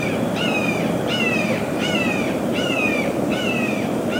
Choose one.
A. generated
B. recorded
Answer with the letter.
A